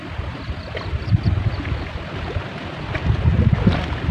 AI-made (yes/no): no